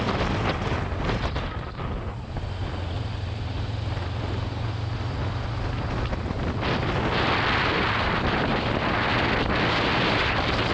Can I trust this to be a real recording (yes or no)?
yes